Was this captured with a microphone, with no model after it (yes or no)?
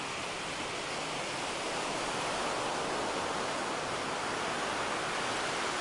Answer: yes